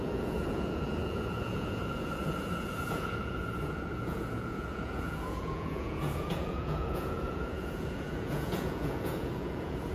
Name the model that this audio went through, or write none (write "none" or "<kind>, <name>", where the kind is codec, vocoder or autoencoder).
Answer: vocoder, Vocos